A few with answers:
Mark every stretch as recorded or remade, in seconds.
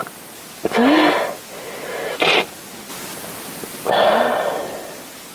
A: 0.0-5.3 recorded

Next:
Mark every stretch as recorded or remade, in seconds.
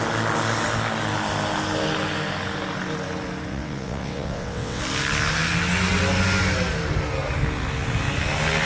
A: 0.0-3.5 recorded; 3.5-4.8 remade; 4.8-8.7 recorded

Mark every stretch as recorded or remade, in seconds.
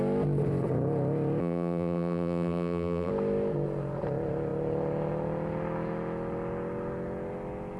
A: 0.0-1.4 recorded; 1.4-3.1 remade; 3.1-7.8 recorded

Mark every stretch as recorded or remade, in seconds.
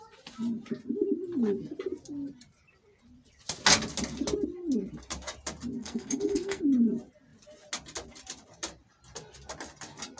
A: 0.0-5.8 recorded; 5.8-6.6 remade; 6.6-10.2 recorded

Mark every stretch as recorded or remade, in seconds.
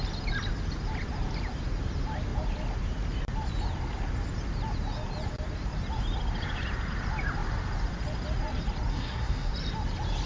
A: 0.0-8.9 recorded; 8.9-9.5 remade; 9.5-10.3 recorded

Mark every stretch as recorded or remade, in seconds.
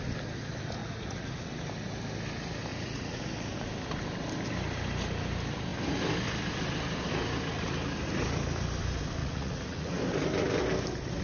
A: 0.0-0.8 recorded; 0.8-1.5 remade; 1.5-2.7 recorded; 2.7-3.2 remade; 3.2-9.2 recorded; 9.2-9.9 remade; 9.9-11.2 recorded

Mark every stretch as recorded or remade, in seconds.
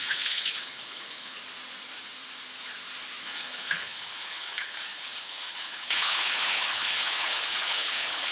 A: 0.0-1.4 remade; 1.4-3.2 recorded; 3.2-8.3 remade